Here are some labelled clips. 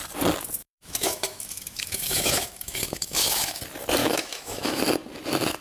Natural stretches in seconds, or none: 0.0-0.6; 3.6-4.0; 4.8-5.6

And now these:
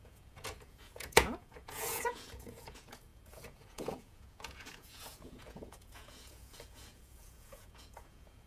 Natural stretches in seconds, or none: none

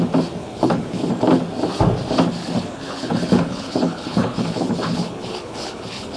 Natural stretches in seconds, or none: 0.0-0.4; 1.1-2.4

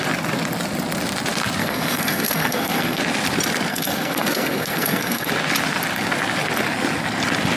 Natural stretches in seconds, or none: 0.0-1.6; 3.0-3.7; 5.3-7.6

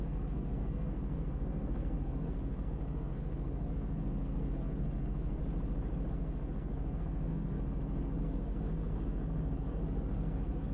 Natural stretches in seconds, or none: 5.4-6.1